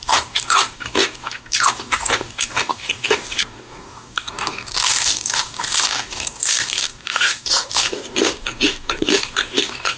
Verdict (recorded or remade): remade